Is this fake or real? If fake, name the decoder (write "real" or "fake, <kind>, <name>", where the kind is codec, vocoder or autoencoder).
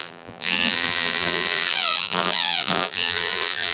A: fake, vocoder, BigVGAN v2